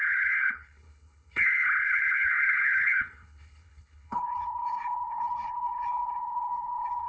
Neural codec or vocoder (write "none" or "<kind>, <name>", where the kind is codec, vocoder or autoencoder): codec, HILCodec